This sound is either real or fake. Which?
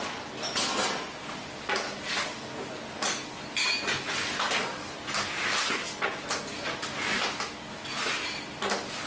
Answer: real